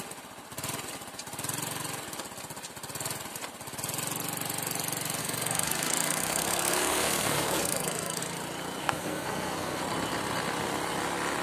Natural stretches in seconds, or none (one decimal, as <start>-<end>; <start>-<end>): 0.0-5.2; 8.2-8.8; 9.8-11.4